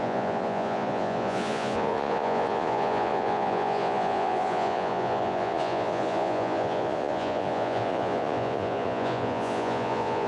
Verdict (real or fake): fake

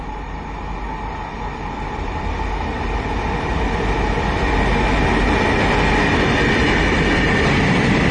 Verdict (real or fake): real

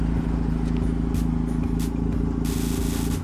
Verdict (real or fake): real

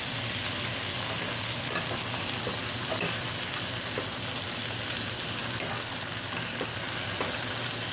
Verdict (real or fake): real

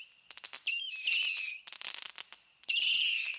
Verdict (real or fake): real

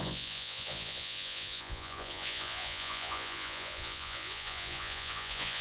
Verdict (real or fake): fake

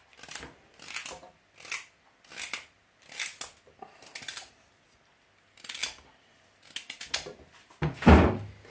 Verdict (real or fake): real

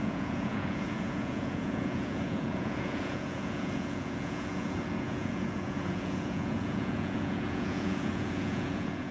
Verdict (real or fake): fake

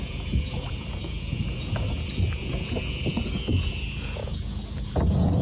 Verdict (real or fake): fake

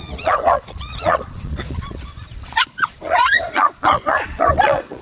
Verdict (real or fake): fake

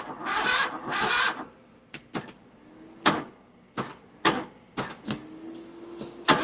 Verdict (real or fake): real